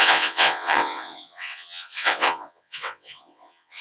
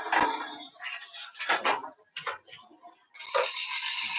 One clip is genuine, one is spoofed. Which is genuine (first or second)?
second